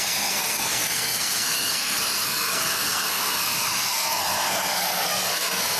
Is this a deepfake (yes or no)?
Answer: yes